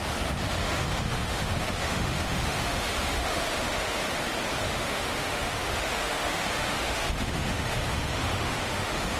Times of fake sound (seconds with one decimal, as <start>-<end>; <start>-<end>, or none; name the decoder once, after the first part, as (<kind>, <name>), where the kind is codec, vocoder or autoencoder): 0.6-4.0 (autoencoder, DAC-VAE); 4.6-9.2